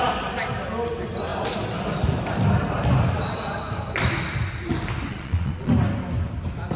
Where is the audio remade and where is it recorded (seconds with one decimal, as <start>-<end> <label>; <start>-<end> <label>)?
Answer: 0.0-5.1 recorded; 5.1-5.7 remade; 5.7-6.8 recorded